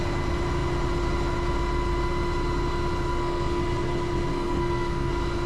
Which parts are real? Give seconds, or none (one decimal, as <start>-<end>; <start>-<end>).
0.0-3.1; 3.6-4.3; 5.1-5.5